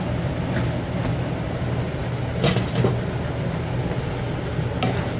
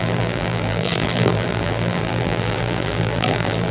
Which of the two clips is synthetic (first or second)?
second